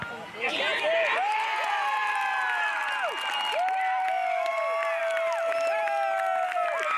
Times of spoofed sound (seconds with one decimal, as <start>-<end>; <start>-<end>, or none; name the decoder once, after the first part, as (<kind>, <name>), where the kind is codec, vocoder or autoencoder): none